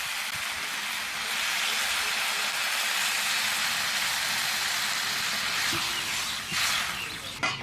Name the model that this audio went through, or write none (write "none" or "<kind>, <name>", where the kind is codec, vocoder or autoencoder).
none